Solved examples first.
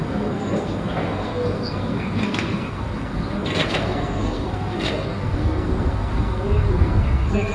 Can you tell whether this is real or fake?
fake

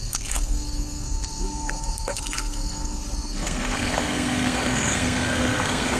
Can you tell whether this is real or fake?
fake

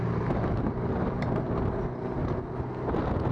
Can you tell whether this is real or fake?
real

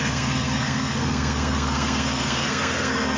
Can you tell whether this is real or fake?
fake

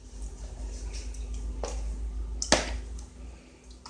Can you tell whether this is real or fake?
real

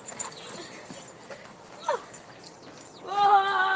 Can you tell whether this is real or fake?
real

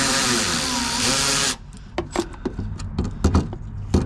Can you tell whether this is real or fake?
real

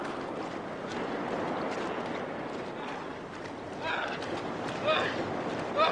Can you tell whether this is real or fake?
real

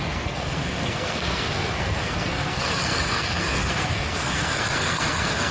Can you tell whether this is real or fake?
fake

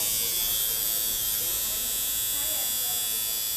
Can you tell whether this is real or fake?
real